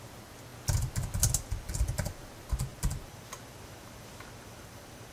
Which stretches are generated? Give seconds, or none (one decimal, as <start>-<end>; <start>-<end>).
none